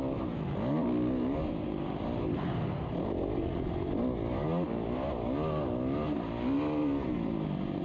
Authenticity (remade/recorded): recorded